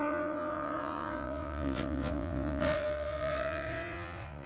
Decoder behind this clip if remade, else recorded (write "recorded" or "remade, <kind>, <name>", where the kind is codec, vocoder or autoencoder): remade, vocoder, WaveNeXt